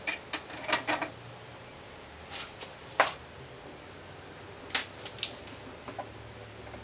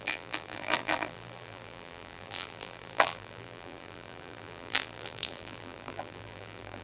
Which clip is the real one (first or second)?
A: first